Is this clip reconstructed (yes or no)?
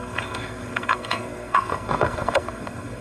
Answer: yes